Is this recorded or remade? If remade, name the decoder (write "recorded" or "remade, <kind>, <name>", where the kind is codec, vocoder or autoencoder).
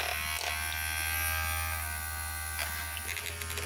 recorded